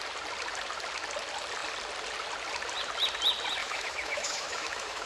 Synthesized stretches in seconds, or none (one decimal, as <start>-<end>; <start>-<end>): 3.6-5.1